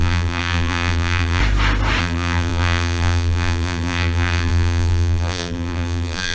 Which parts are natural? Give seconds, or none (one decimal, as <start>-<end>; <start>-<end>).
1.4-2.0